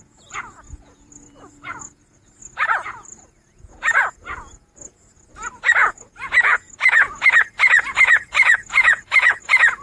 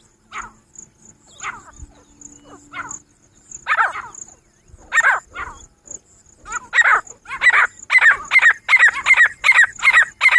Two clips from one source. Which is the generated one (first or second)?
first